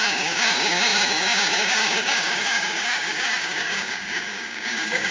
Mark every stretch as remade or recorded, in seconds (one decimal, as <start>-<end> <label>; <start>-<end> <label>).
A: 0.0-5.1 remade